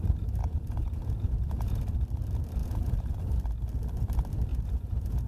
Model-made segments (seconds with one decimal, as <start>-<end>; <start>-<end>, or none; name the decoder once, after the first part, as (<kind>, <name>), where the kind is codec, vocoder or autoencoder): 0.4-1.8 (vocoder, Vocos); 2.6-3.2; 4.5-5.3